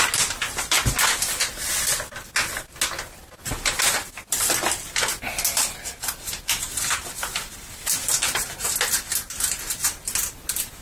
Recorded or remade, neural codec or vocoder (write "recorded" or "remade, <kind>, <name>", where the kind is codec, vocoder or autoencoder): recorded